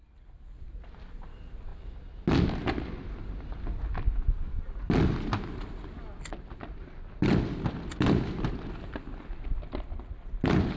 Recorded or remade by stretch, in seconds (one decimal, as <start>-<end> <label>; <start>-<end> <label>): 0.0-10.8 recorded